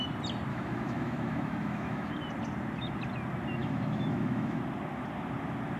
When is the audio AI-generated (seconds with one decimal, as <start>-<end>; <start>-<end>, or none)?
0.5-2.1; 3.6-4.6